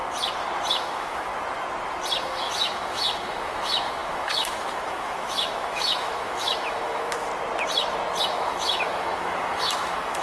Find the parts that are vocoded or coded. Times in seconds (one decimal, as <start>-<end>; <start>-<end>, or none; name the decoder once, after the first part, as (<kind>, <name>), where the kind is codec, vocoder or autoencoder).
0.7-1.3 (autoencoder, DAC-VAE); 2.2-7.3; 8.2-10.2